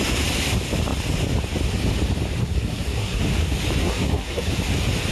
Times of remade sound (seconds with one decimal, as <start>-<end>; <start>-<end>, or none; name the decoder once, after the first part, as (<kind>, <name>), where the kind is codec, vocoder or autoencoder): 2.4-3.2 (codec, SNAC); 3.8-4.5